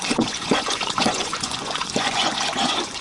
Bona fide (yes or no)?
no